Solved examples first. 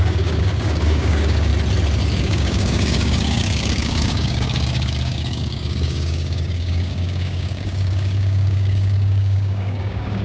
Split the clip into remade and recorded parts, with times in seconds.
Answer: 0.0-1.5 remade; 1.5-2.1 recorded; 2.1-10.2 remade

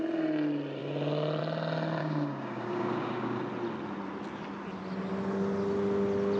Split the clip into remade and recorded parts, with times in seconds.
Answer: 0.0-2.0 recorded; 2.0-3.4 remade; 3.4-6.4 recorded